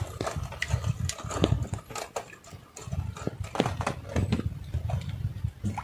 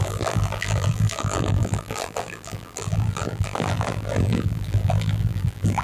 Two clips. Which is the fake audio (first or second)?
second